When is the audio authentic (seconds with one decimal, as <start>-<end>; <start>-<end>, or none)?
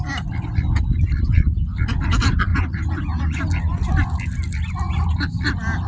0.0-2.5; 3.4-5.9